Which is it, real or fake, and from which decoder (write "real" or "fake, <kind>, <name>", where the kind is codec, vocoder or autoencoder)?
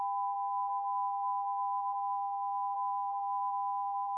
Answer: fake, codec, SNAC